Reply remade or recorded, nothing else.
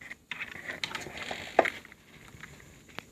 recorded